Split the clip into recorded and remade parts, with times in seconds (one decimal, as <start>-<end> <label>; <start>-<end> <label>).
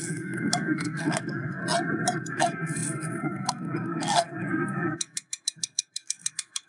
0.0-1.6 remade; 1.6-2.3 recorded; 2.3-6.7 remade